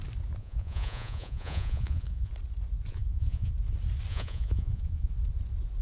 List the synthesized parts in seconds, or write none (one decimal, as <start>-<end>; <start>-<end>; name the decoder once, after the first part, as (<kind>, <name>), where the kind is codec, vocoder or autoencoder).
0.4-2.3 (vocoder, Vocos); 2.9-3.5; 4.1-5.1